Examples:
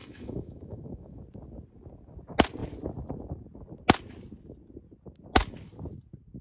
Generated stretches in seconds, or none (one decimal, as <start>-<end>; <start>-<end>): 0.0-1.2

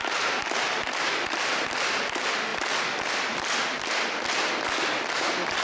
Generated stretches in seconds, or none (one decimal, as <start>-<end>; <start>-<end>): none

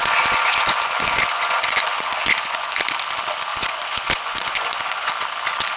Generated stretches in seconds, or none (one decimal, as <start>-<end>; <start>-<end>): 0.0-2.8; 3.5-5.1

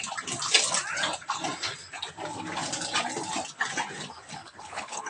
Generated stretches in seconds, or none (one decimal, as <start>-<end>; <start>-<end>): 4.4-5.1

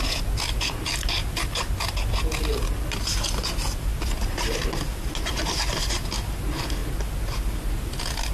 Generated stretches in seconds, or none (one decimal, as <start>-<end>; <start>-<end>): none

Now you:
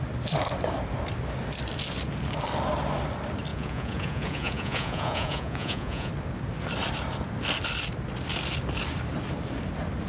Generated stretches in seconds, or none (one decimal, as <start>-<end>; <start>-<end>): 3.5-6.1

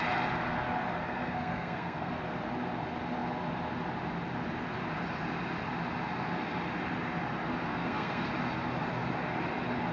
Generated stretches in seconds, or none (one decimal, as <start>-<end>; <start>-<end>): 1.0-2.1; 7.7-8.3